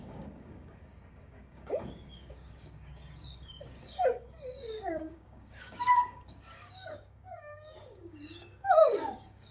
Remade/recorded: remade